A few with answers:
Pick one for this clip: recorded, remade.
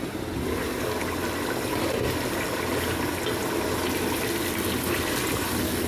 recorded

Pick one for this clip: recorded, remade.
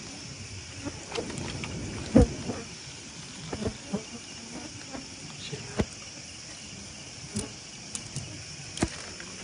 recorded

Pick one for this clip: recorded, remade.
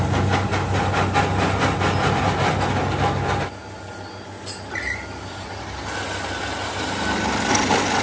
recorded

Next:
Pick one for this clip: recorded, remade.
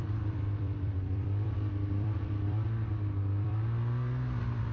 remade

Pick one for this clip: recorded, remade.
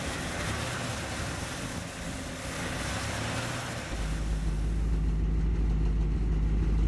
recorded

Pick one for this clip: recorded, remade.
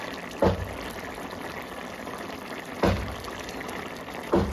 recorded